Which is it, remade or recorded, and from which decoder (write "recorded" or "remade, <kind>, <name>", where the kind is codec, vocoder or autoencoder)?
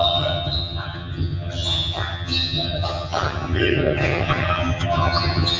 remade, vocoder, HiFi-GAN